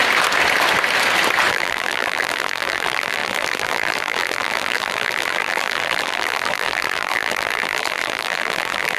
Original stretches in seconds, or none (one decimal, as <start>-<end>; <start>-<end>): 0.0-1.5